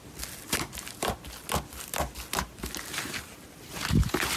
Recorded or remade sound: recorded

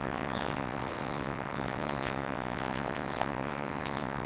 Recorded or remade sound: remade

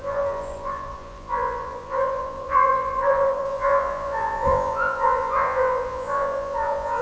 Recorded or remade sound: remade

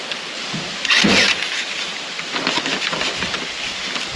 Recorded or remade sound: recorded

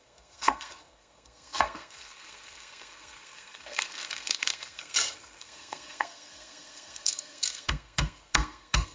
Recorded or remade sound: remade